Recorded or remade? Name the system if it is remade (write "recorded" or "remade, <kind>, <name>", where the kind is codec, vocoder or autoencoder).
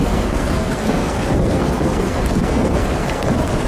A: remade, codec, SNAC